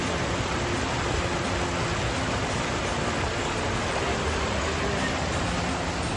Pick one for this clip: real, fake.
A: real